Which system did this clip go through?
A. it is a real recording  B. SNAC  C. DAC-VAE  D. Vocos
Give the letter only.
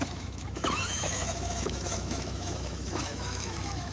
C